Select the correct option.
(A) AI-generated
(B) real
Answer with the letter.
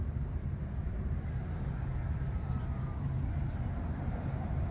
A